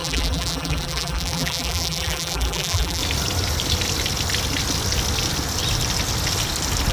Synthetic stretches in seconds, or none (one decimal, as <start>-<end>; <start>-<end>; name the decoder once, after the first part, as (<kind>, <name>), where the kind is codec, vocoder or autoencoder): 0.0-3.0 (vocoder, BigVGAN v2)